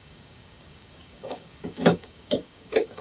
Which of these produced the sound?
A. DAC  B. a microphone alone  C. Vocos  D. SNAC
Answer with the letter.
A